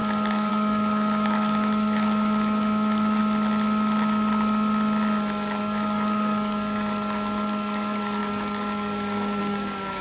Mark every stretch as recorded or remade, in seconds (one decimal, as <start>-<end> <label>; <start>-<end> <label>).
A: 0.0-3.2 remade; 3.2-5.6 recorded; 5.6-10.0 remade